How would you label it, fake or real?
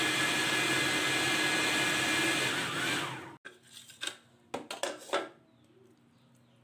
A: real